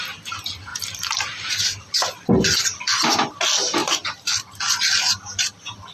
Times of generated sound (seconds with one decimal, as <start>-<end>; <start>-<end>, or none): 0.7-1.5; 2.6-3.2; 3.8-4.7